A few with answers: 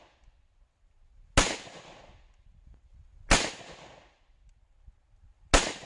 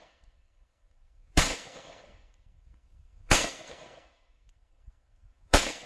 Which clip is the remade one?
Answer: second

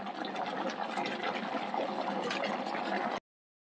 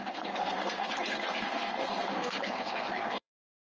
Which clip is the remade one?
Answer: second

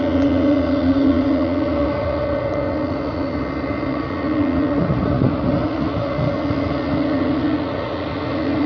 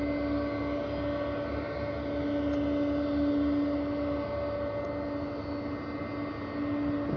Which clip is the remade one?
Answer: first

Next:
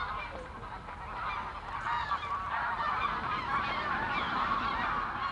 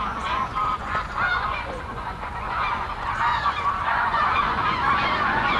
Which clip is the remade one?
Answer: second